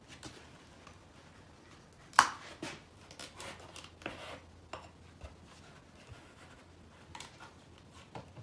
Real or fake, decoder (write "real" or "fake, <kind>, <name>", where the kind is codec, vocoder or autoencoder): real